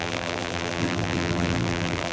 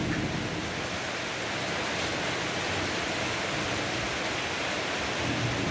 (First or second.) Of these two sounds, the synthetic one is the first